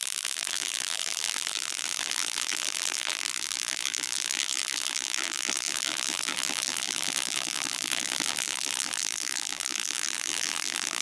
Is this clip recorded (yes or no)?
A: no